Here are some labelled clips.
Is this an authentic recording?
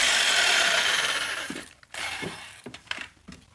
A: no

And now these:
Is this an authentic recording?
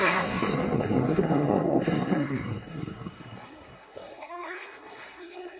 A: no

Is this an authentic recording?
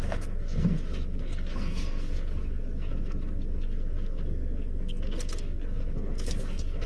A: no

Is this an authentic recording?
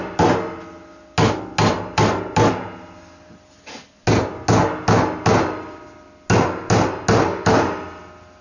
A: yes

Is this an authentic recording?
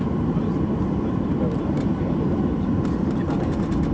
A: yes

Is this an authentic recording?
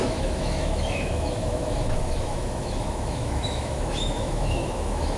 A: no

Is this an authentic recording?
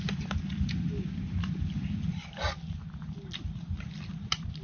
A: yes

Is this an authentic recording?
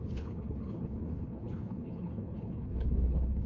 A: no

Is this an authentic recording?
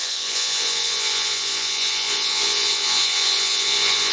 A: no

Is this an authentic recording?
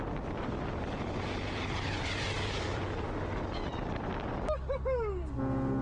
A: yes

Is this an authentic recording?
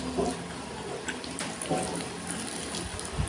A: yes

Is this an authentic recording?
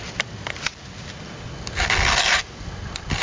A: yes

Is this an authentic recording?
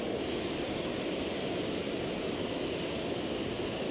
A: yes